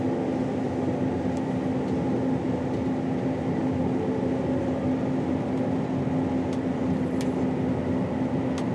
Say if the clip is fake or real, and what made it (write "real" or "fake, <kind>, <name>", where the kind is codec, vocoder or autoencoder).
real